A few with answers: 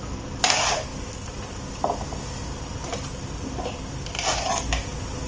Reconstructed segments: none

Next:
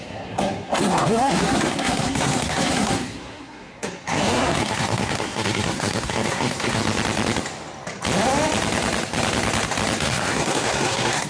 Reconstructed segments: 0.0-6.8 (codec, SNAC); 10.0-11.3